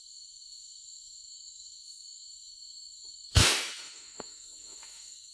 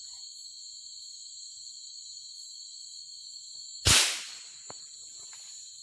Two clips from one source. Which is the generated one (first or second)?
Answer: first